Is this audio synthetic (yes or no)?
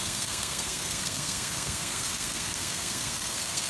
yes